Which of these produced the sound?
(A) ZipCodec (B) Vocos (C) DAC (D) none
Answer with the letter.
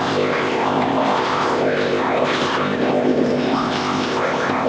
A